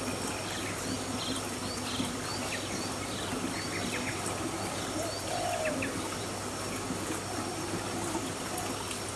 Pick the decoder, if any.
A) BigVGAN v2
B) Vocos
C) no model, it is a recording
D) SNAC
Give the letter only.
C